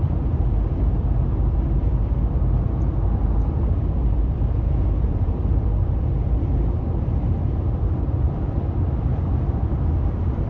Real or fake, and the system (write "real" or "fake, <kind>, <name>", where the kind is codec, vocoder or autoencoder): fake, vocoder, BigVGAN v2